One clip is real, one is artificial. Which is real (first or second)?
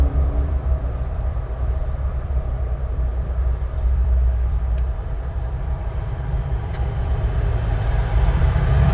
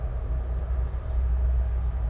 second